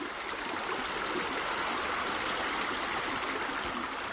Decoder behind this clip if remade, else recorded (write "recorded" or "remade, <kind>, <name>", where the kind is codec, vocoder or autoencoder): recorded